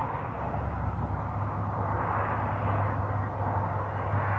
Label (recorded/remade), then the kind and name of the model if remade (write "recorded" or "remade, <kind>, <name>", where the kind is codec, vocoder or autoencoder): recorded